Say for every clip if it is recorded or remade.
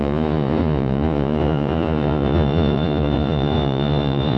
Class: remade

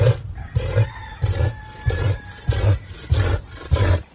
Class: remade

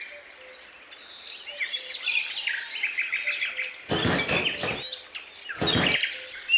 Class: recorded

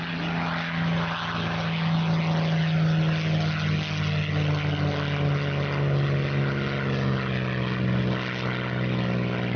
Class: recorded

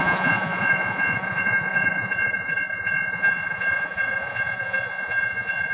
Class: remade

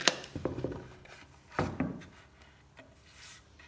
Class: recorded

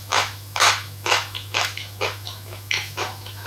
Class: remade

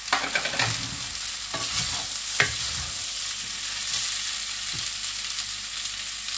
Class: recorded